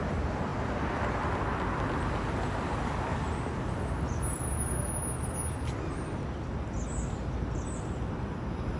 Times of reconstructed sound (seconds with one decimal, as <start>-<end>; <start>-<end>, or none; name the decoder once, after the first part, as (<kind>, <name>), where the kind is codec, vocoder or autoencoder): none